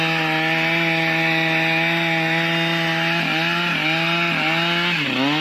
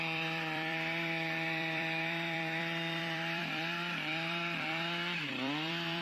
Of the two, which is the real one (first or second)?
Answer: first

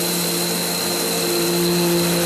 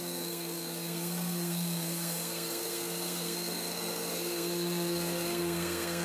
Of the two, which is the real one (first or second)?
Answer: first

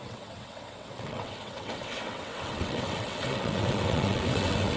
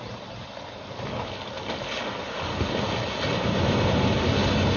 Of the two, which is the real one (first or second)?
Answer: second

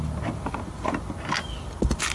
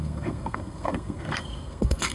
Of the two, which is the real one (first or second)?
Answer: first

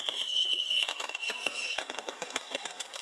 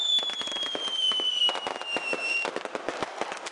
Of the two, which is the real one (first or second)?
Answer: second